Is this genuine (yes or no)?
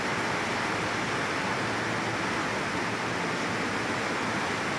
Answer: yes